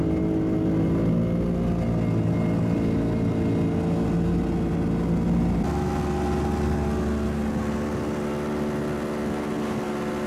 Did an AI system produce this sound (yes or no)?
no